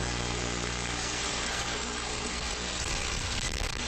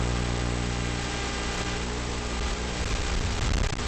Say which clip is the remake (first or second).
first